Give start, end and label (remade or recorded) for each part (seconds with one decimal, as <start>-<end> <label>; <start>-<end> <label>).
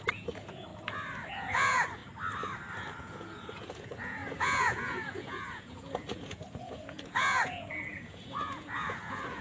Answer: 0.0-0.7 remade; 0.7-1.3 recorded; 1.3-2.0 remade; 2.0-3.0 recorded; 3.0-9.4 remade